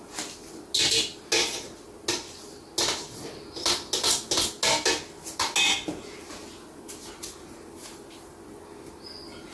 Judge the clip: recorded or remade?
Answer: recorded